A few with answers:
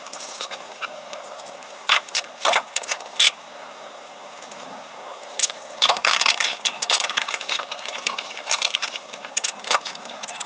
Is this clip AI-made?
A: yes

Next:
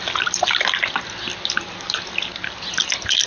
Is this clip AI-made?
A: no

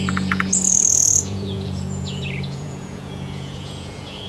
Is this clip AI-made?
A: yes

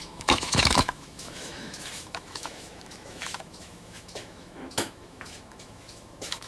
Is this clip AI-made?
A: yes